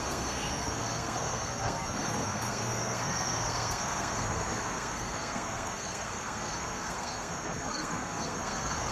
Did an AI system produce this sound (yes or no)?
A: yes